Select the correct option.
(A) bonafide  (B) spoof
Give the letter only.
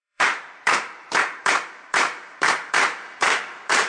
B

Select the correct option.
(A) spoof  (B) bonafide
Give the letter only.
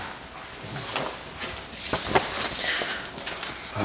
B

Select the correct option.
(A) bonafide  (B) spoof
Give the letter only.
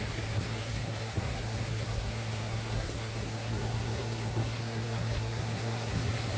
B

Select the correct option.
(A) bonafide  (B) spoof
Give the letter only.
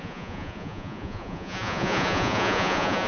B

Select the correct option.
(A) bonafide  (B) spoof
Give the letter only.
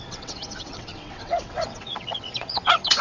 B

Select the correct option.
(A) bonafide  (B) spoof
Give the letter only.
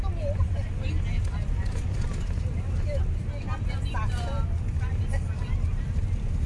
A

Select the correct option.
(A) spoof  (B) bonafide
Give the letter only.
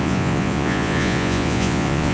A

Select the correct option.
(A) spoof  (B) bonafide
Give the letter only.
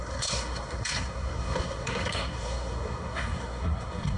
A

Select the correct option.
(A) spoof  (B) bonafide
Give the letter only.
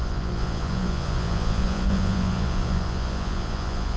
A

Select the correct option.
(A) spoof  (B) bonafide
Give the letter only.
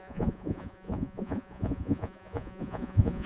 A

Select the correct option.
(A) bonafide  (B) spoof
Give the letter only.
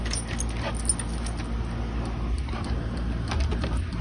A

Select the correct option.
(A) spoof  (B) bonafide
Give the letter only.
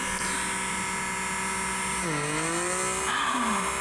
B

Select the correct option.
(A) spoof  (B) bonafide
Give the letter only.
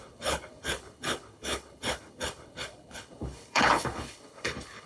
A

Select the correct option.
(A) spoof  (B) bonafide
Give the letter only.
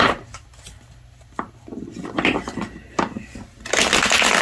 B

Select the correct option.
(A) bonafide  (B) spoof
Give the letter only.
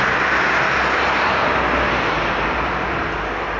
A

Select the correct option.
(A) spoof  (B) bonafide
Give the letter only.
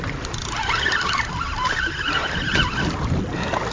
B